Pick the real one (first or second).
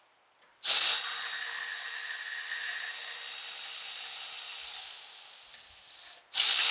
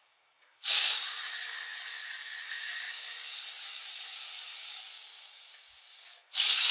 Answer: first